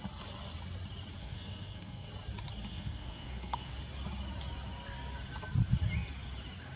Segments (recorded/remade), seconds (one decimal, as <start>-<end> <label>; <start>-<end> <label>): 0.0-1.2 recorded; 1.2-2.1 remade; 2.1-2.7 recorded; 2.7-3.7 remade; 3.7-6.8 recorded